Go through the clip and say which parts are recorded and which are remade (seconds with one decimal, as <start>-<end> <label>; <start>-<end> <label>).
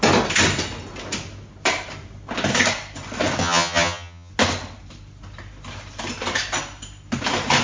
0.0-3.4 recorded; 3.4-4.3 remade; 4.3-7.6 recorded